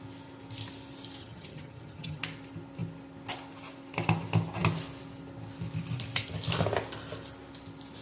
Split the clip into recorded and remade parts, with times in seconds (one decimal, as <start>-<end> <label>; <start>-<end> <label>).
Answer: 0.0-1.2 recorded; 1.2-2.2 remade; 2.2-8.0 recorded